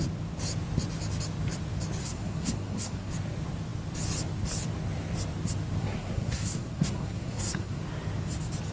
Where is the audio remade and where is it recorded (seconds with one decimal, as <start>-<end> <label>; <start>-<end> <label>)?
0.0-2.0 recorded; 2.0-3.1 remade; 3.1-5.8 recorded; 5.8-7.8 remade; 7.8-8.7 recorded